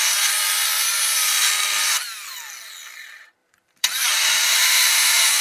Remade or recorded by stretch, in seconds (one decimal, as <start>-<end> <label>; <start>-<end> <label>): 0.0-3.4 recorded; 3.4-5.4 remade